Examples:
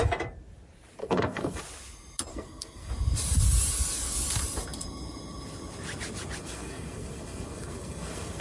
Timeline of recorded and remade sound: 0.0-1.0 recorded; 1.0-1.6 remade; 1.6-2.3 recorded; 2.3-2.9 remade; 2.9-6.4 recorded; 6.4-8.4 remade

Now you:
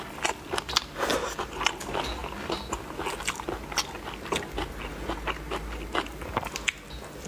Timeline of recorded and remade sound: 0.0-7.3 recorded

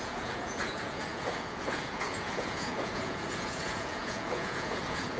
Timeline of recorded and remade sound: 0.0-5.2 remade